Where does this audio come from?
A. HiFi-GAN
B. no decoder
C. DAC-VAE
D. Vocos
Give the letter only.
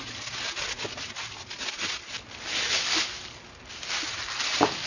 B